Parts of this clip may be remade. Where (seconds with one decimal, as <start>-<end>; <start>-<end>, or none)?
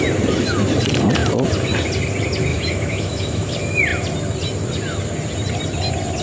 2.5-3.5